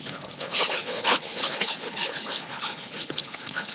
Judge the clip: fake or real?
fake